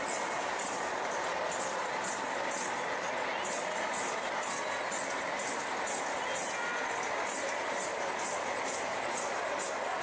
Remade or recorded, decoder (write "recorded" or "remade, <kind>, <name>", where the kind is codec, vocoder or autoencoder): recorded